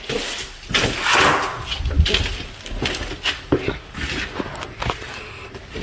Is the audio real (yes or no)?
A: yes